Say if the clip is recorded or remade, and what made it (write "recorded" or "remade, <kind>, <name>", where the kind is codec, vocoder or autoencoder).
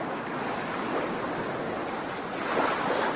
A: recorded